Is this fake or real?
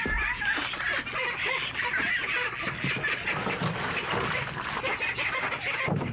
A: real